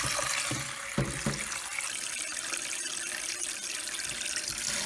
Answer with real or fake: real